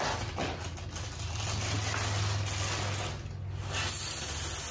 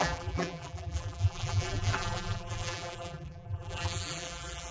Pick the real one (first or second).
first